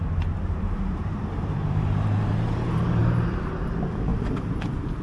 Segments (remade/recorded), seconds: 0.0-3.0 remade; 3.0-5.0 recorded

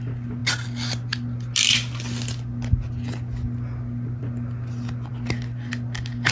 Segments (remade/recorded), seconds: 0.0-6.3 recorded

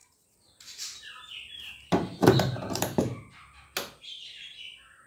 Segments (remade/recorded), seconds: 0.0-3.0 remade; 3.0-5.1 recorded

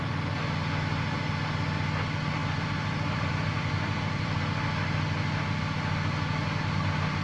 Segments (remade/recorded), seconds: 0.0-2.4 recorded; 2.4-4.4 remade; 4.4-7.2 recorded

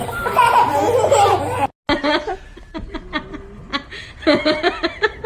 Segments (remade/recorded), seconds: 0.0-5.3 recorded

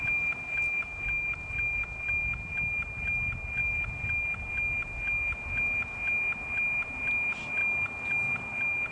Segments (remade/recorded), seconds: 0.0-8.9 recorded

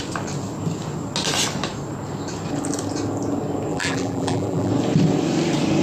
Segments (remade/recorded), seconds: 0.0-3.7 recorded; 3.7-4.7 remade; 4.7-5.8 recorded

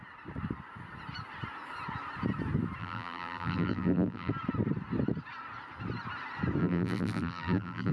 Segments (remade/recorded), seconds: 0.0-2.8 recorded; 2.8-4.3 remade; 4.3-6.6 recorded; 6.6-7.9 remade